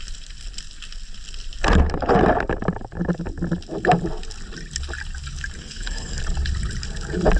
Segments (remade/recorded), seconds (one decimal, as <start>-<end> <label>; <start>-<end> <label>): 0.0-5.6 recorded; 5.6-6.2 remade; 6.2-7.4 recorded